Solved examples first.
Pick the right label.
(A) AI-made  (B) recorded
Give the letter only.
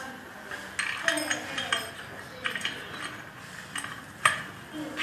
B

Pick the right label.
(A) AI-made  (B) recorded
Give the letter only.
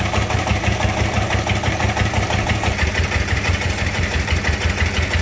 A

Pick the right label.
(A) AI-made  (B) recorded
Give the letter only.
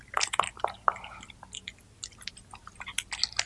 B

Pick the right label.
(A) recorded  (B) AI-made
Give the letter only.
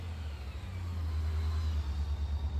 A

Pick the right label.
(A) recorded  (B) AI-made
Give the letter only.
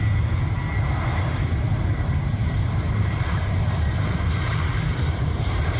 B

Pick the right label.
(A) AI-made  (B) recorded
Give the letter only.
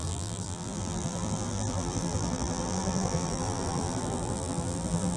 A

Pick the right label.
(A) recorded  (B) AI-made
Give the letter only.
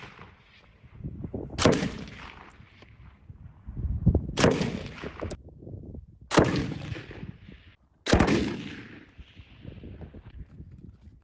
A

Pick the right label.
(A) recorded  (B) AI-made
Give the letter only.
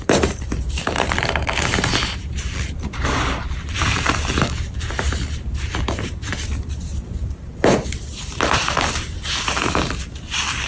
B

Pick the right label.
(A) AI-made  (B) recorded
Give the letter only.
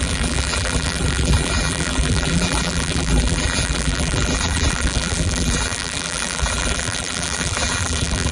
A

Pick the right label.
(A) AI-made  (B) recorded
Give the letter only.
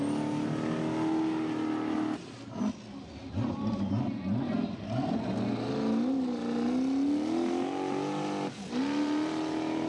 B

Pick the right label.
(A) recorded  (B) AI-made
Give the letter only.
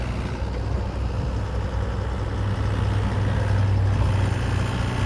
A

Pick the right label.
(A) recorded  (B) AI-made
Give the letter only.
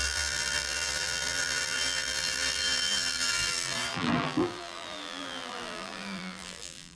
B